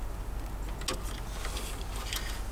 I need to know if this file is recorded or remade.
recorded